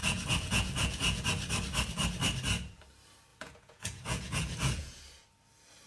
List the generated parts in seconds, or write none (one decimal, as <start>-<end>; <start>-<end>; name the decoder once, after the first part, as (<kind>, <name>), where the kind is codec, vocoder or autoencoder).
0.0-1.3 (vocoder, Vocos); 3.3-5.0